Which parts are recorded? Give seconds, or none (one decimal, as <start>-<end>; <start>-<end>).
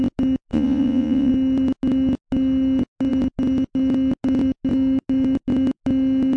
0.0-0.5; 1.3-6.4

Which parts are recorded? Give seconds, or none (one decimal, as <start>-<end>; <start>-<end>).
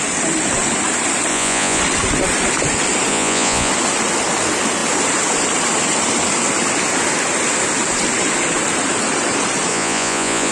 0.0-1.3; 1.8-3.1; 3.7-9.7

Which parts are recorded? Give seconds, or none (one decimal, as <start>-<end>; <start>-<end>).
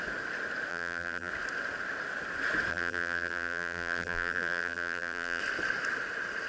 0.0-0.7; 1.3-2.7; 5.4-6.5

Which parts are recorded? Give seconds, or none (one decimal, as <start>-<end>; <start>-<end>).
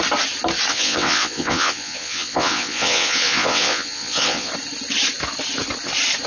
0.0-0.7; 4.5-6.3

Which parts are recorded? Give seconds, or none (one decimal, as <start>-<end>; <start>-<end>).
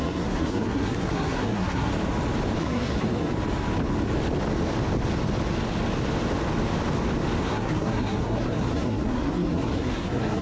1.9-2.6; 3.3-7.4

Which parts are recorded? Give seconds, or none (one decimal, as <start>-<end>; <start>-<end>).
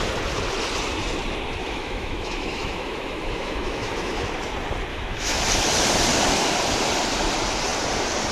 0.0-1.6; 4.2-4.9; 5.4-8.3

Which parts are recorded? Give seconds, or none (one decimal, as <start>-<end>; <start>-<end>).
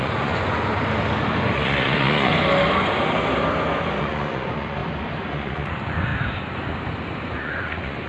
0.7-1.3; 2.3-4.0; 4.8-5.3; 6.1-7.3